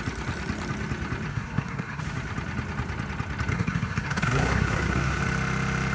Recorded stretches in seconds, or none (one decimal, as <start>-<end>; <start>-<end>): 0.0-1.3; 2.0-3.5; 5.2-5.9